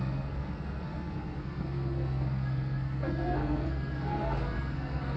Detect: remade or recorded remade